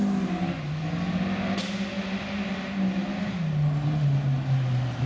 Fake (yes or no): no